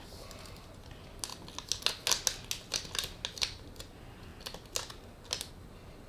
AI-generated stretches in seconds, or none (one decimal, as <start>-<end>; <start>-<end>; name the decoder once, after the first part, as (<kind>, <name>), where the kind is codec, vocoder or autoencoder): none